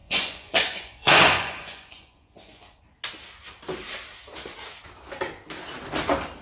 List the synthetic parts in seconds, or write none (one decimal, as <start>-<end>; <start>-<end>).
0.0-2.8